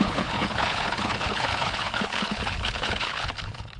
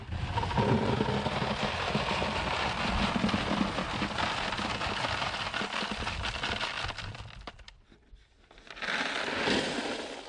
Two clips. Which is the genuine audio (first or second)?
second